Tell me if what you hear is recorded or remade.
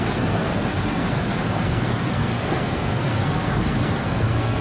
remade